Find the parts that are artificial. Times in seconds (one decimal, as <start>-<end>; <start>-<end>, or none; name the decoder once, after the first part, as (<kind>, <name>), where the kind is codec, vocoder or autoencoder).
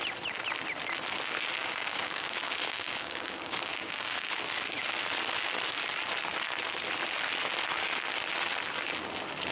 1.6-4.3 (codec, DAC)